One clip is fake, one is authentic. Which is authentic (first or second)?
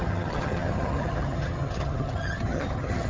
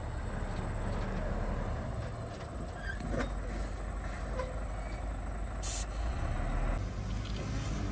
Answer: second